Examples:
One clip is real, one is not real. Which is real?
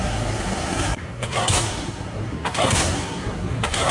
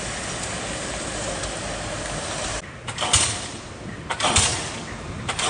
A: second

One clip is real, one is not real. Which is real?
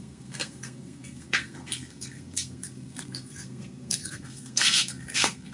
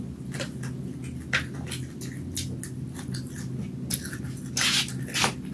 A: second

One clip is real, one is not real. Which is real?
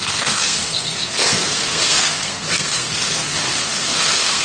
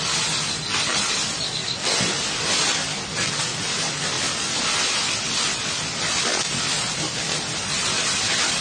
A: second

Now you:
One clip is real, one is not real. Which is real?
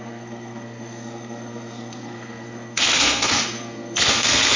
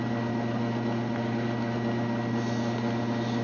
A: second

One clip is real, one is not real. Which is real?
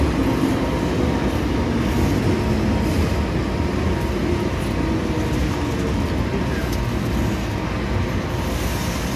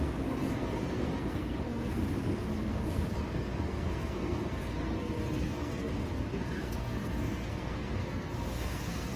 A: first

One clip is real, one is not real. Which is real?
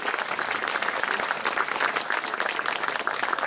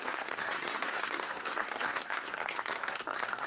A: first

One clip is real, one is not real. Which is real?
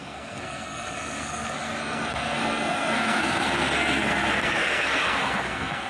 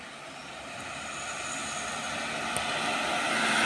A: second